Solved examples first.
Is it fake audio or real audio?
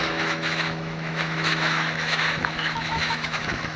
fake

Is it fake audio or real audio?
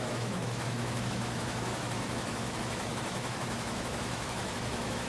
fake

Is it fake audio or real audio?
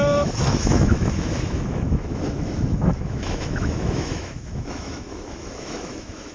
fake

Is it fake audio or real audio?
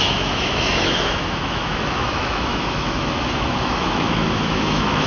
fake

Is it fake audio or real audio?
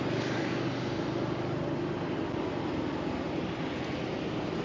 real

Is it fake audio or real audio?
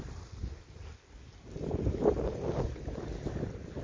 real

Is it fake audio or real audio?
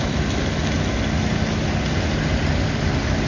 real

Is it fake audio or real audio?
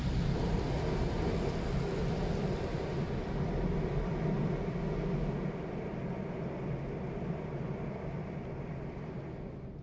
real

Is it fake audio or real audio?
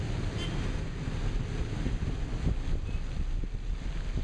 real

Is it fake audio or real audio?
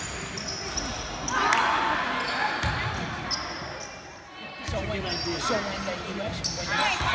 real